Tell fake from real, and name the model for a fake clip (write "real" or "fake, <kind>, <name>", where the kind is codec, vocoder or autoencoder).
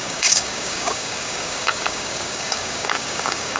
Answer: fake, codec, DAC